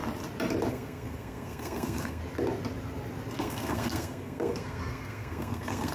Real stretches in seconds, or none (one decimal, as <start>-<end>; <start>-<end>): 0.0-0.7; 2.2-3.4